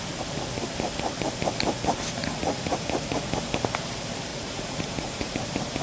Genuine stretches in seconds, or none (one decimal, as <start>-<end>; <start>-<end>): 0.0-2.2; 3.3-4.3; 5.3-5.8